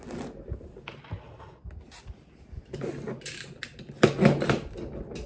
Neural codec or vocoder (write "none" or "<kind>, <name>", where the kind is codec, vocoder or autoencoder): none